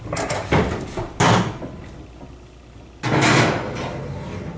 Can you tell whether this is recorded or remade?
recorded